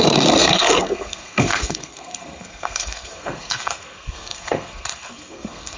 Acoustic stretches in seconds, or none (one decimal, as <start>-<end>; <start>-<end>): none